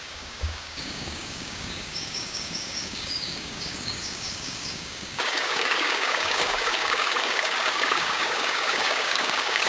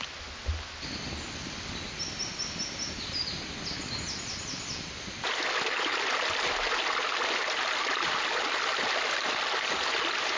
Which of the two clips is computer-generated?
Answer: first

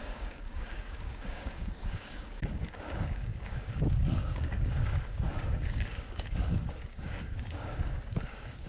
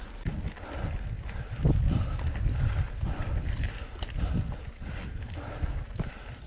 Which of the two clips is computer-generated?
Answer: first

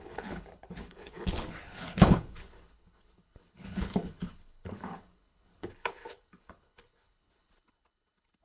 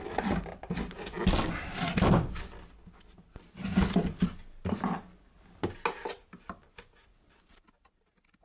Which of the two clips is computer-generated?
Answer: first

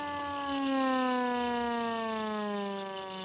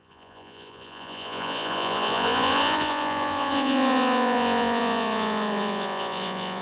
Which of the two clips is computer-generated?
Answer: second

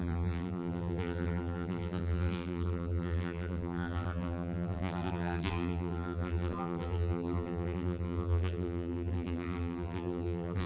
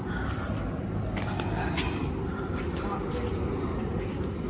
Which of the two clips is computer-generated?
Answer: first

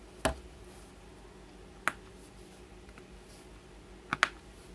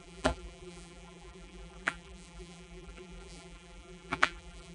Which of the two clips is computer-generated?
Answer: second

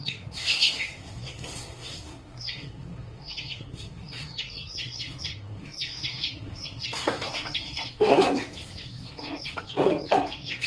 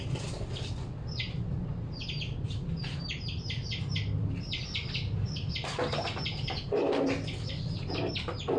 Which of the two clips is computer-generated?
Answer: first